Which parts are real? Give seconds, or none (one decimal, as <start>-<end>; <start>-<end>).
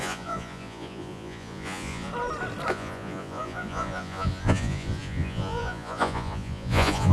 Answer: 2.1-2.7